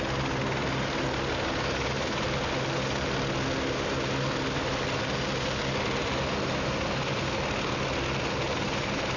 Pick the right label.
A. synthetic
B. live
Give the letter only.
B